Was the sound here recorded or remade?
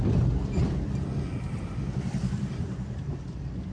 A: recorded